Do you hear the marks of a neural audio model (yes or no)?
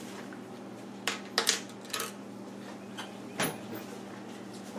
no